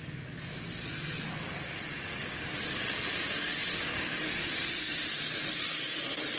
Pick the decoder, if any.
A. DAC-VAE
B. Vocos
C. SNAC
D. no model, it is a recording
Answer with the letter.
D